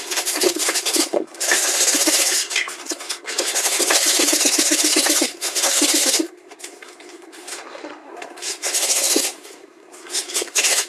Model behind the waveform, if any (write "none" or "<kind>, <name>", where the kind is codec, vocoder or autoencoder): codec, SNAC